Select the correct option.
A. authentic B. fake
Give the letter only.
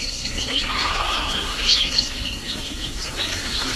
B